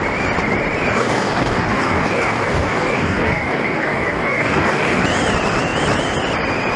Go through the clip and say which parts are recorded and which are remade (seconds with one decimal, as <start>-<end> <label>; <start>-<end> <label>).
0.0-0.9 recorded; 0.9-5.0 remade; 5.0-6.8 recorded

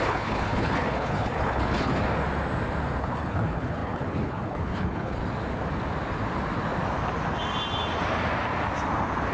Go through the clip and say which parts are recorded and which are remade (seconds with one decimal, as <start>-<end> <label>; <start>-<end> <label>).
0.0-1.9 remade; 1.9-3.0 recorded; 3.0-5.2 remade; 5.2-9.3 recorded

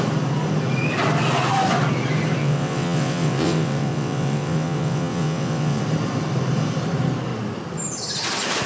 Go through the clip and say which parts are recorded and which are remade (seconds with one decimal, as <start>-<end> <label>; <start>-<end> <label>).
0.0-2.4 recorded; 2.4-5.8 remade; 5.8-8.7 recorded

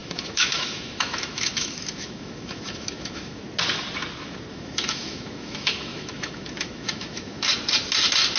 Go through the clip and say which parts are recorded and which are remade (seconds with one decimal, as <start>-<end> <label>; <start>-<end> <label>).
0.0-3.4 remade; 3.4-4.5 recorded; 4.5-7.5 remade; 7.5-8.4 recorded

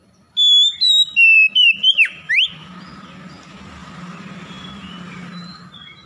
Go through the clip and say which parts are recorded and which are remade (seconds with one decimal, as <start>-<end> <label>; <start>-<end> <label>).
0.0-0.7 recorded; 0.7-1.8 remade; 1.8-6.1 recorded

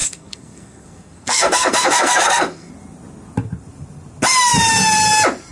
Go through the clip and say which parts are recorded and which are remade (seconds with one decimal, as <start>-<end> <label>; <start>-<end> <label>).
0.0-2.7 remade; 2.7-5.5 recorded